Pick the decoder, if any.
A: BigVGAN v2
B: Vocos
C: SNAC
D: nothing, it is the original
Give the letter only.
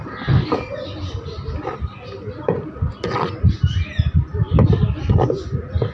D